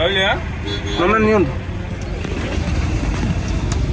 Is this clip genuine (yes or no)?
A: yes